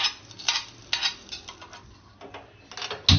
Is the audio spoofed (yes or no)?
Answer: no